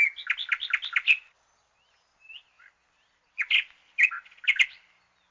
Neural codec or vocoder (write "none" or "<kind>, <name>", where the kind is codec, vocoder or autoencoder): none